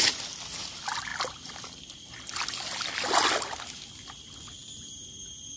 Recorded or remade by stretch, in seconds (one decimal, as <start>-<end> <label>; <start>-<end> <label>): 0.0-5.6 recorded